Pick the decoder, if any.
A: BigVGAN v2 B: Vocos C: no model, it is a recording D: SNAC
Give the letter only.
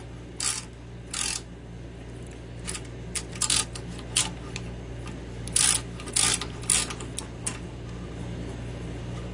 C